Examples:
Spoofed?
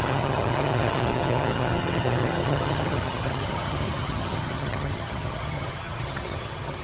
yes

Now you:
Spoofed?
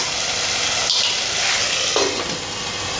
no